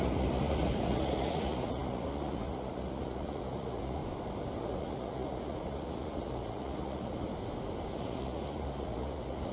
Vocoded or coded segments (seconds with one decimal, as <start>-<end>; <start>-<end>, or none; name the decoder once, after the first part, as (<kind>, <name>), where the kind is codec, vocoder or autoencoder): 0.0-4.0 (vocoder, Vocos); 4.6-7.3; 7.9-9.5